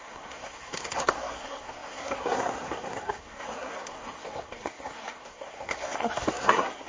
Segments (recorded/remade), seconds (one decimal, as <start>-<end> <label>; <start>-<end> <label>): 0.0-6.9 remade